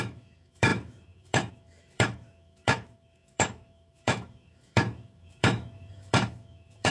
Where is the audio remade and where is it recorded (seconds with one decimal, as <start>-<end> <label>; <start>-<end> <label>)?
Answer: 0.0-6.9 remade